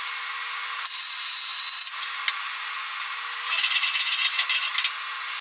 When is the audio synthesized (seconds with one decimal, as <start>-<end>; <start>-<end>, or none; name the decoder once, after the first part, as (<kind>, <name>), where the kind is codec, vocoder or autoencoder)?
none